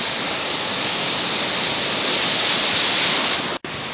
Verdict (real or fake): real